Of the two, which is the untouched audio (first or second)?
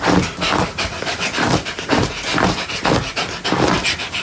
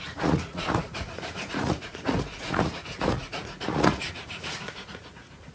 first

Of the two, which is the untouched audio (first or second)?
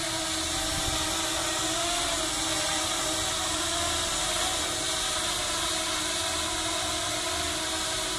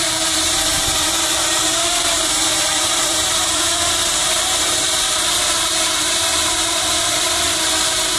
first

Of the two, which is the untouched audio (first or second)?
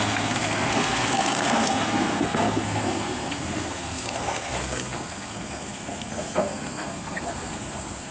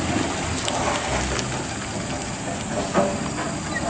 second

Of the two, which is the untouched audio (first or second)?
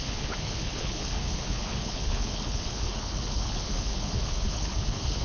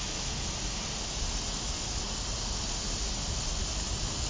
second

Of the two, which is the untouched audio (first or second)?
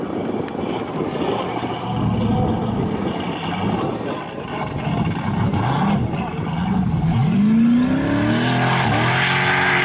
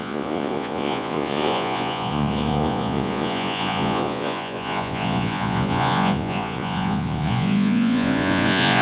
first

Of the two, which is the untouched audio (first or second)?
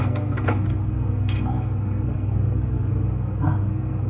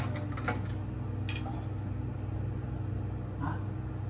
second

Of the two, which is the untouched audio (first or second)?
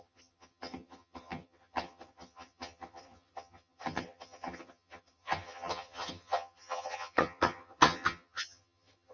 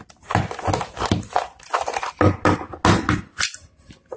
second